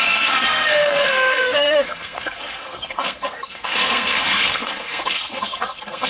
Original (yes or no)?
no